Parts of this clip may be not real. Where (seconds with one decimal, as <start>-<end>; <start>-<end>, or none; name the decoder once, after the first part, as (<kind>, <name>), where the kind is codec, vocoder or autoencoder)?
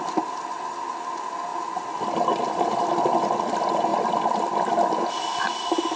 1.5-2.9 (vocoder, BigVGAN v2); 3.9-5.6